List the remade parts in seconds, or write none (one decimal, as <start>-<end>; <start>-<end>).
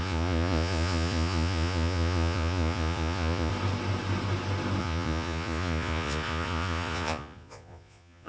0.0-3.5; 4.8-8.3